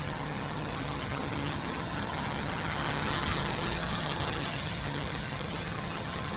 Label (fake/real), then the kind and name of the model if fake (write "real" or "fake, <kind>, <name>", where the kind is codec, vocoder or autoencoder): fake, vocoder, HiFi-GAN